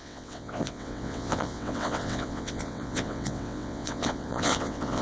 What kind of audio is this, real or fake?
fake